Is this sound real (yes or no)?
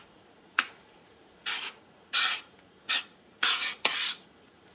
no